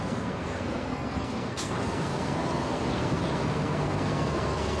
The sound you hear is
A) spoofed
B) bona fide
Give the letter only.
A